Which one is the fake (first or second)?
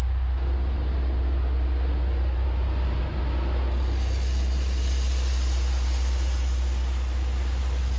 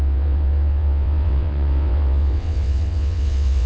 second